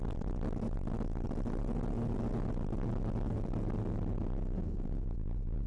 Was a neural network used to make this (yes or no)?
no